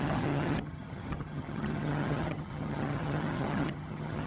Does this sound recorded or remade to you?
remade